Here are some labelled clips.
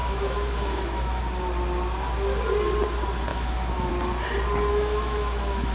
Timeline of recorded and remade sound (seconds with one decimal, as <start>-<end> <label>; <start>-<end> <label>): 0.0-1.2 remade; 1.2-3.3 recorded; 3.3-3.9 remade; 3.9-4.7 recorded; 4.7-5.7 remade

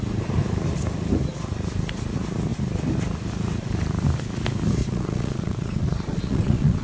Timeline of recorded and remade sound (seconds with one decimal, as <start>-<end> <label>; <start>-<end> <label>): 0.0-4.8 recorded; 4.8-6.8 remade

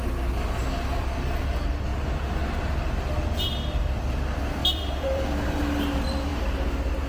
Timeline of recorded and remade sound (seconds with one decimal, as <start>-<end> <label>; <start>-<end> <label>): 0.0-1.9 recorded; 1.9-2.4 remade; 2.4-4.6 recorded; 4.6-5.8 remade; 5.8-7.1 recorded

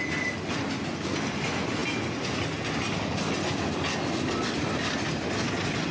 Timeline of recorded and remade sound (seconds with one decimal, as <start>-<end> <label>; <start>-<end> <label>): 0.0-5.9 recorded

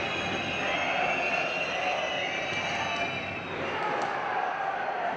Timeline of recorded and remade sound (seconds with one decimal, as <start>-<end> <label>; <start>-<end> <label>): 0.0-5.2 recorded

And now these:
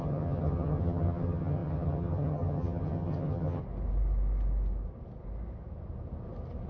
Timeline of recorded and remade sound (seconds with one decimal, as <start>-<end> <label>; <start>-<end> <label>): 0.0-3.6 remade; 3.6-6.7 recorded